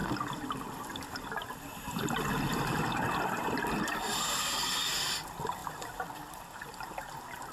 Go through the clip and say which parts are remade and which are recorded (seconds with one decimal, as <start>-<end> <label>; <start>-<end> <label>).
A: 0.0-4.4 remade; 4.4-5.6 recorded; 5.6-7.1 remade; 7.1-7.5 recorded